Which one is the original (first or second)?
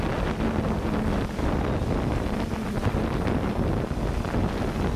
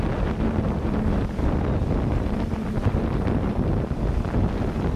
first